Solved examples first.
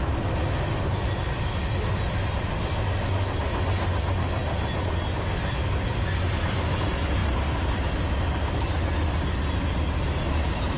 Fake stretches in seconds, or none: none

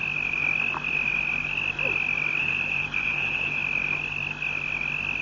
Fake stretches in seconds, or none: 2.4-3.6 (vocoder, BigVGAN v2)

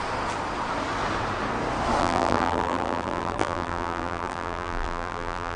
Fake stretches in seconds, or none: 2.0-5.6 (vocoder, BigVGAN v2)

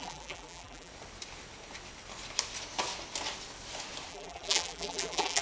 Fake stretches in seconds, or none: 0.0-0.9 (vocoder, BigVGAN v2); 4.1-5.4